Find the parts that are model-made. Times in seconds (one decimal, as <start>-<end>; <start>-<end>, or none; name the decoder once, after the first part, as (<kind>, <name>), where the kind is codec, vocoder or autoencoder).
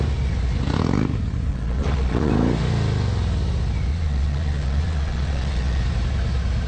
1.5-2.3 (vocoder, Vocos); 3.9-5.8